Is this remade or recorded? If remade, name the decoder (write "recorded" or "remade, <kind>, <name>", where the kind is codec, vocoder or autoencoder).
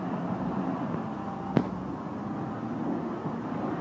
recorded